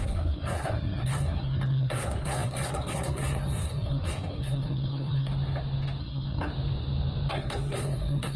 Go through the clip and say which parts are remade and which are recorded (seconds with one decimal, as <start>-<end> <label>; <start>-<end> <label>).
0.0-5.3 remade; 5.3-6.0 recorded; 6.0-6.5 remade; 6.5-7.3 recorded; 7.3-8.4 remade